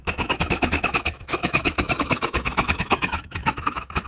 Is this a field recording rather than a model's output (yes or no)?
no